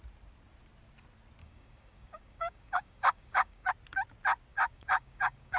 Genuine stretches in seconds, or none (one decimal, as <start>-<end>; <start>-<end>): 0.0-1.4; 3.7-4.5